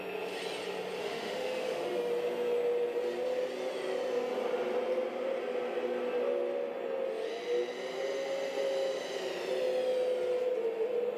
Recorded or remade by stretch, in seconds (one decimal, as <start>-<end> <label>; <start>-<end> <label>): 0.0-1.0 recorded; 1.0-2.1 remade; 2.1-11.2 recorded